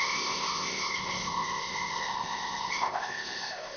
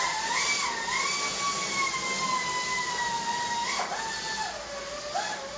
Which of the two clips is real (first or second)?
second